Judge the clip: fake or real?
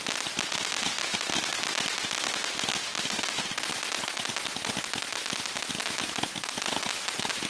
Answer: real